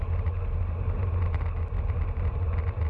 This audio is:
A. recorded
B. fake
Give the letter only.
A